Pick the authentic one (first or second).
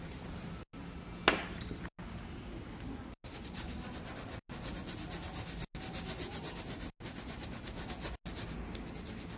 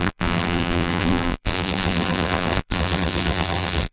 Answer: first